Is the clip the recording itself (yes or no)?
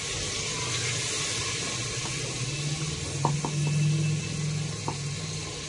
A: yes